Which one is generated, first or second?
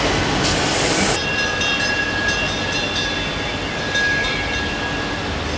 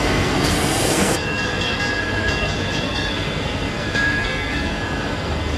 second